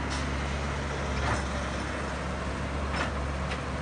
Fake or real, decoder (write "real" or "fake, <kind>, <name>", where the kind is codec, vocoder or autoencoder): real